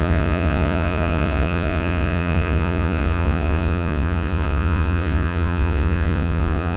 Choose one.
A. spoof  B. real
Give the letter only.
A